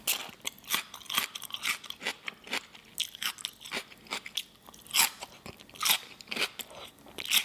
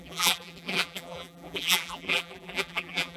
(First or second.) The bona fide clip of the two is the first